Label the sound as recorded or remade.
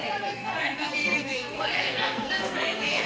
remade